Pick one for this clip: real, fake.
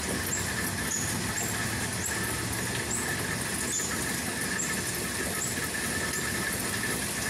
real